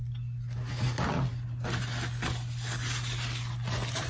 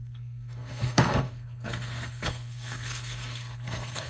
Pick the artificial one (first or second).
second